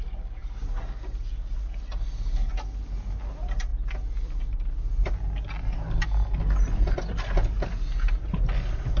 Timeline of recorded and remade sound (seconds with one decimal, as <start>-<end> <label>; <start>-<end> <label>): 0.0-9.0 recorded

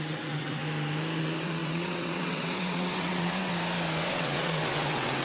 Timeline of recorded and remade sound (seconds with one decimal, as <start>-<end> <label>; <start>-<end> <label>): 0.0-0.6 remade; 0.6-1.2 recorded; 1.2-3.5 remade; 3.5-4.1 recorded; 4.1-5.2 remade

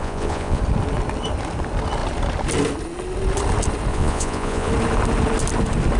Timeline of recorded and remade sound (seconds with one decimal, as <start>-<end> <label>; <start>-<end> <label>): 0.0-0.6 remade; 0.6-3.9 recorded; 3.9-4.7 remade; 4.7-6.0 recorded

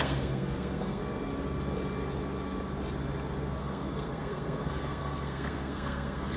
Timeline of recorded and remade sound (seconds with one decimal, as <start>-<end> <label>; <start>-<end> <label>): 0.0-1.0 remade; 1.0-3.6 recorded; 3.6-6.4 remade

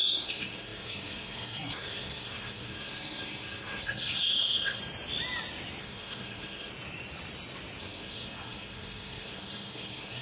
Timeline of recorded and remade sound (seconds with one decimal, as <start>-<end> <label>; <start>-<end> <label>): 0.0-4.8 remade; 4.8-5.8 recorded; 5.8-6.7 remade; 6.7-7.8 recorded; 7.8-10.2 remade

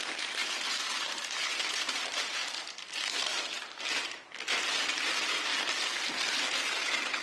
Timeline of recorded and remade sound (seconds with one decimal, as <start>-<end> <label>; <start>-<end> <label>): 0.0-2.4 remade; 2.4-2.9 recorded; 2.9-3.3 remade; 3.3-3.9 recorded; 3.9-5.5 remade; 5.5-6.6 recorded; 6.6-7.2 remade